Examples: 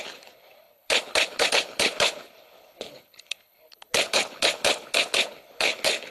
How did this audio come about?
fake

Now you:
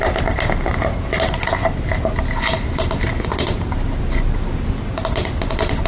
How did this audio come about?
real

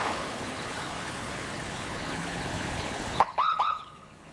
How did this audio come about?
fake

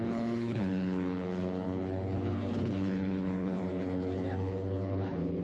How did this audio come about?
fake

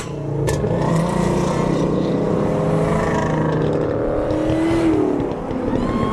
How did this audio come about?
real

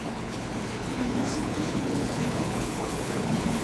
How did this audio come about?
fake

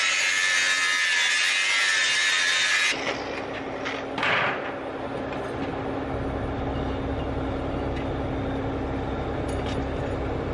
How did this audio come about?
real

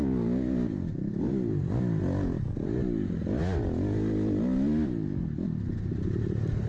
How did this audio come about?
real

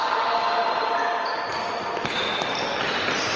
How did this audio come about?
real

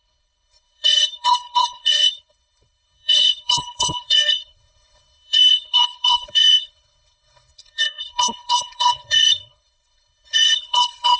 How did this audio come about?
fake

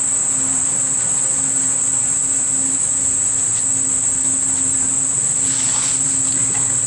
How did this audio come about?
real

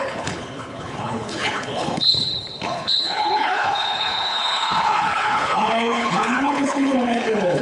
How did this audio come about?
fake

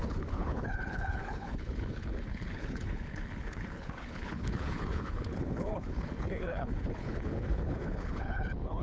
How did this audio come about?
fake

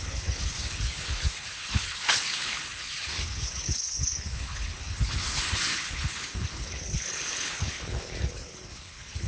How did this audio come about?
fake